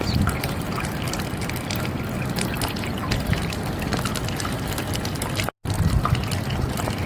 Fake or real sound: real